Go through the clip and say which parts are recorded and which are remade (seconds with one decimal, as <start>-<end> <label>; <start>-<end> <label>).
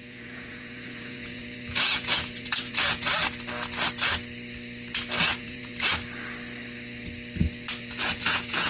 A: 0.0-3.1 remade; 3.1-5.2 recorded; 5.2-5.7 remade; 5.7-7.8 recorded; 7.8-8.7 remade